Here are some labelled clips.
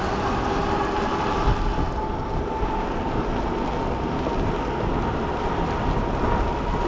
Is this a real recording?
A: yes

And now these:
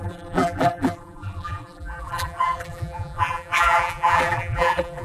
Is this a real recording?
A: no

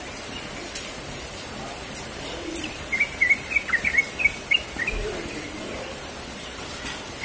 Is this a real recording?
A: no